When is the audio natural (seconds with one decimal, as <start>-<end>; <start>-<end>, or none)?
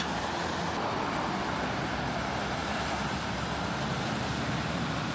0.0-2.6; 3.3-5.1